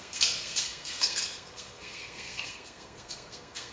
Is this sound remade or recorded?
remade